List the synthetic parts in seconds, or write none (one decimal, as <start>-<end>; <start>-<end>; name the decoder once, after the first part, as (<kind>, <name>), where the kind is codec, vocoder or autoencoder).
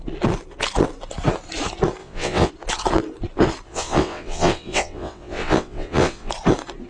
2.0-2.5 (vocoder, WaveNeXt); 3.7-6.3